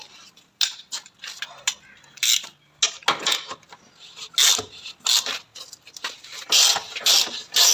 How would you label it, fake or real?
real